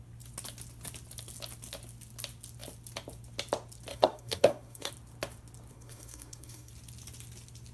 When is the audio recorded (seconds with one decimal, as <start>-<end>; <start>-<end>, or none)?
0.0-3.9; 4.9-5.7; 6.7-7.7